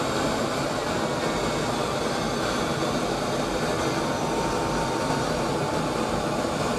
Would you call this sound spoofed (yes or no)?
no